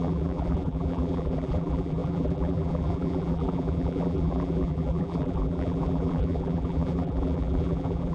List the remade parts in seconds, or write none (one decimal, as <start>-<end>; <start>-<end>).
0.0-8.1